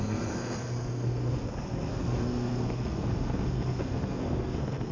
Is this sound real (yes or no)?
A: no